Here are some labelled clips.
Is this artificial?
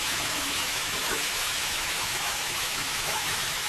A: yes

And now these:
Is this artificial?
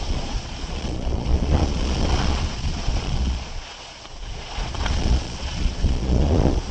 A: yes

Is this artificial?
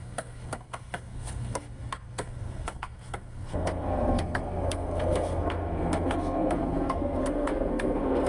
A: yes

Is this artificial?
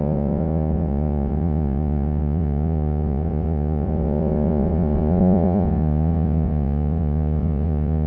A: yes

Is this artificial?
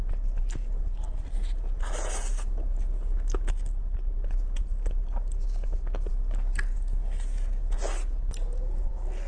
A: no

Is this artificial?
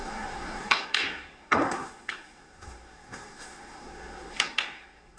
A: yes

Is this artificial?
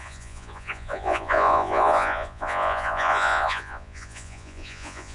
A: yes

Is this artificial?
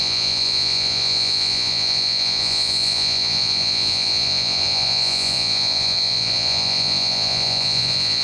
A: yes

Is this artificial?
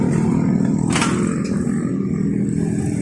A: no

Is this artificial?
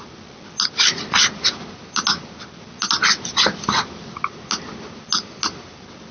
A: no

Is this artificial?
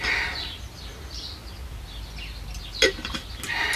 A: no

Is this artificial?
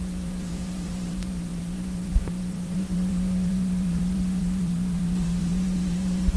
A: yes